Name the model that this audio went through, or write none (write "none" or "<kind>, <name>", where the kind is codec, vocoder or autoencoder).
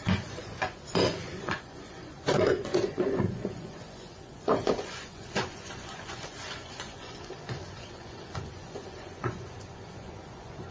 vocoder, Vocos